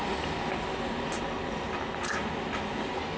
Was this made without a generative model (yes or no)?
yes